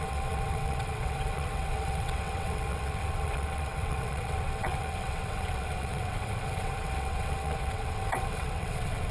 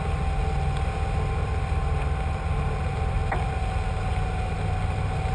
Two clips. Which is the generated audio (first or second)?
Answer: first